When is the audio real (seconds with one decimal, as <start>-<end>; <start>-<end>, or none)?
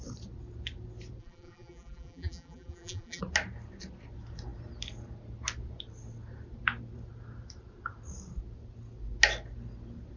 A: 0.0-1.2; 3.2-10.2